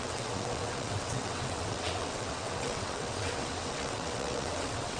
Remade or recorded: remade